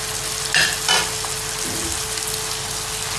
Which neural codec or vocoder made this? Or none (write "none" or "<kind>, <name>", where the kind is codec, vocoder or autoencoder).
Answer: none